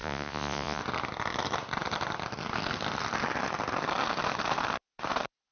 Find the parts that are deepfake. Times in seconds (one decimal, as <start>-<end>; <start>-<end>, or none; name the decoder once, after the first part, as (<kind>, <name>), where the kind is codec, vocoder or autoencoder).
0.0-0.8 (vocoder, Vocos)